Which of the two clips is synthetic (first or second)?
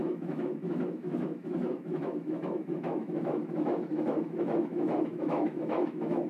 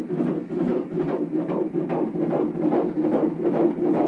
first